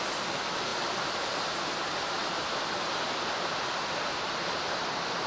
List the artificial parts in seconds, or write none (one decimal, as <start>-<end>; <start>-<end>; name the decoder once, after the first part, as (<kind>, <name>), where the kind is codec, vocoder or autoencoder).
none

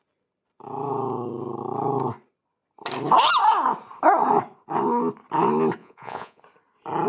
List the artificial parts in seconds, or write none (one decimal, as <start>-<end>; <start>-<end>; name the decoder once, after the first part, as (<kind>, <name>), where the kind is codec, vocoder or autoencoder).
5.8-6.4 (vocoder, Vocos)

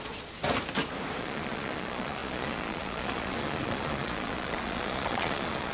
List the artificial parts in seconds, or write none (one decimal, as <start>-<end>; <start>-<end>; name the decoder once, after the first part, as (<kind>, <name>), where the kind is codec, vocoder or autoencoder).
0.0-0.4 (vocoder, Vocos); 1.2-5.7